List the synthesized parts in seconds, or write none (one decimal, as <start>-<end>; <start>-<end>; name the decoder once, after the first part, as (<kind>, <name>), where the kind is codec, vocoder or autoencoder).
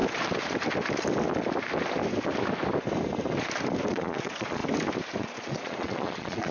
3.9-4.6 (vocoder, Vocos); 5.2-6.5